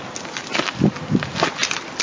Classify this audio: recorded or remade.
recorded